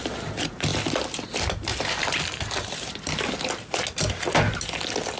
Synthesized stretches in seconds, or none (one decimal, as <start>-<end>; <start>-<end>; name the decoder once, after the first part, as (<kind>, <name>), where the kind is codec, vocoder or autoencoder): none